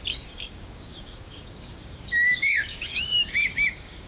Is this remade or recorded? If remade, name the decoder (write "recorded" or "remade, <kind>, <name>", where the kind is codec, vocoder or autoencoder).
remade, codec, DAC